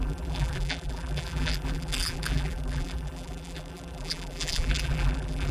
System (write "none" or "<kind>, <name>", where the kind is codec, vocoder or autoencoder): vocoder, BigVGAN v2